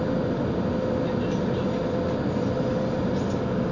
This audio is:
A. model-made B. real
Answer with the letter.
B